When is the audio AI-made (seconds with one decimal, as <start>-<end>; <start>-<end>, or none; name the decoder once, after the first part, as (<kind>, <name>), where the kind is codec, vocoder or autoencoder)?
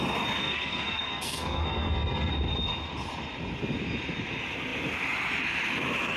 0.4-2.3 (codec, SNAC)